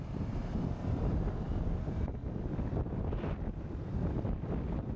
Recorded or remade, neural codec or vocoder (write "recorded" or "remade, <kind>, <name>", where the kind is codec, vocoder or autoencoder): remade, vocoder, BigVGAN v2